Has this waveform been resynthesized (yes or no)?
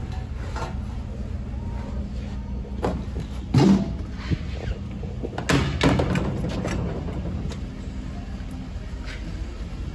no